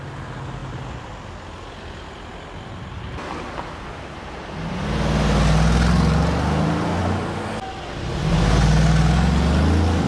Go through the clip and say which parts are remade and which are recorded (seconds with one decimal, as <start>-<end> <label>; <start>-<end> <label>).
0.0-10.1 recorded